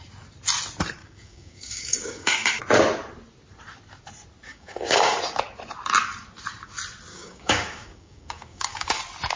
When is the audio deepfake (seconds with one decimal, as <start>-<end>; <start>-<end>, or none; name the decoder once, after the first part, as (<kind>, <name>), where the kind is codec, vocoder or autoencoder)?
1.0-2.5 (codec, DAC); 4.5-5.2; 7.1-9.0